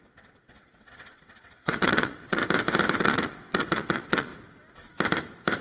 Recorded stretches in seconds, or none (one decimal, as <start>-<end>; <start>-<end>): 2.4-3.0; 4.3-5.6